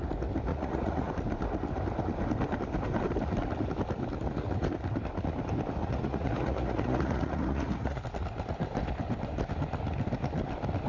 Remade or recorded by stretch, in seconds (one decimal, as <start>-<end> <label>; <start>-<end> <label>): 0.0-0.5 recorded; 0.5-1.1 remade; 1.1-5.8 recorded; 5.8-8.0 remade; 8.0-10.9 recorded

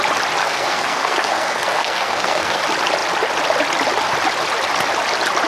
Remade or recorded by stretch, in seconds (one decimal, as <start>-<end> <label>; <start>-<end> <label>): 0.0-0.4 recorded; 0.4-2.6 remade; 2.6-5.5 recorded

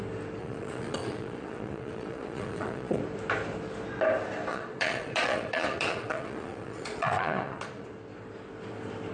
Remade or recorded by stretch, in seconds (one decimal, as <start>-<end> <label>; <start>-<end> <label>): 0.0-0.4 recorded; 0.4-3.0 remade; 3.0-4.5 recorded; 4.5-7.9 remade; 7.9-9.1 recorded

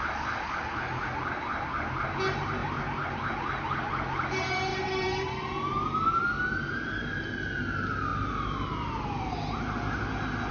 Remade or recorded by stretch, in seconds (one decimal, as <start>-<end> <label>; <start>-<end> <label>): 0.0-2.6 recorded; 2.6-3.9 remade; 3.9-4.7 recorded; 4.7-6.2 remade; 6.2-8.1 recorded; 8.1-9.0 remade; 9.0-10.5 recorded

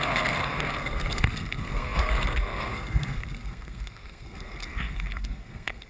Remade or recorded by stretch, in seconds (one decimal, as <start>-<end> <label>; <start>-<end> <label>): 0.0-5.9 remade

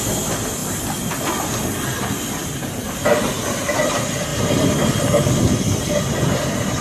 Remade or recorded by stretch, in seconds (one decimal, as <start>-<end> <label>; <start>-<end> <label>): 0.0-6.8 recorded

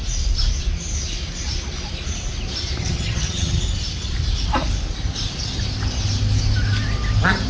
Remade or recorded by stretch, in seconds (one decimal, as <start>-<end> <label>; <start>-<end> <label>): 0.0-2.8 recorded; 2.8-3.6 remade; 3.6-7.5 recorded

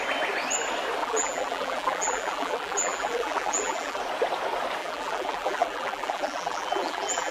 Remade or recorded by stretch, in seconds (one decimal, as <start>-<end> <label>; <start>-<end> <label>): 0.0-1.0 recorded; 1.0-4.0 remade; 4.0-4.8 recorded; 4.8-7.3 remade